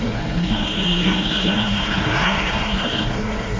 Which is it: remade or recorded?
remade